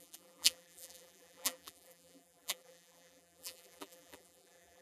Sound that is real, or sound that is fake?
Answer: fake